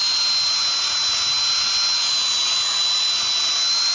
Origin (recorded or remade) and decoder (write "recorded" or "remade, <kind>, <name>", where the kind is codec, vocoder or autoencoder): recorded